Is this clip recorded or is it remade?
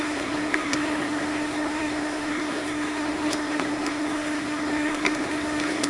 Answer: remade